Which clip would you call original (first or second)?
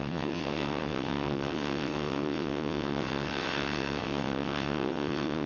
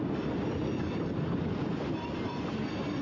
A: second